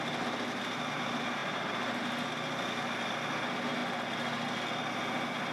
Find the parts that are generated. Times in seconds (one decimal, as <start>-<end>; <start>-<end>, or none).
1.4-2.0